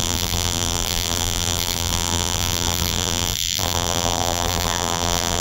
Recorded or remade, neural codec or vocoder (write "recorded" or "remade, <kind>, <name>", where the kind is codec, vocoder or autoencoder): remade, vocoder, BigVGAN v2